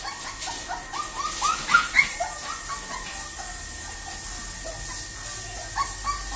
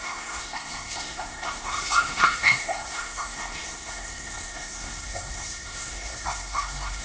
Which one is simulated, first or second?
second